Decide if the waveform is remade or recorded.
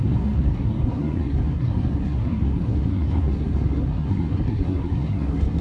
remade